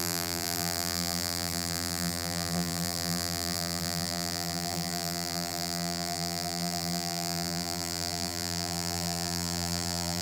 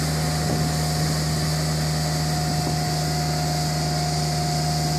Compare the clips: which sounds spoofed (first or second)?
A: first